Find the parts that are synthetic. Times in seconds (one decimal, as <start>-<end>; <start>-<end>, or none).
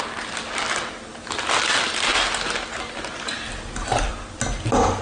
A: none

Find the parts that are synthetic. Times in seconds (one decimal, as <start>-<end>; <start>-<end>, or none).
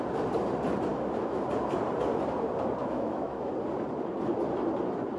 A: 0.9-1.4; 2.8-3.5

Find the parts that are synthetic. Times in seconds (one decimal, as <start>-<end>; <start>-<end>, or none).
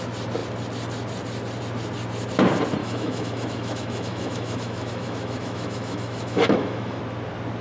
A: 2.8-7.0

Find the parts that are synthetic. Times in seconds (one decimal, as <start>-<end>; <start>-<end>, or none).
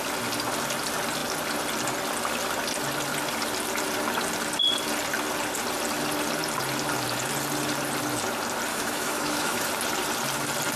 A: 8.7-9.7